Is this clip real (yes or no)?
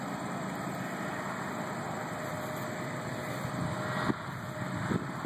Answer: yes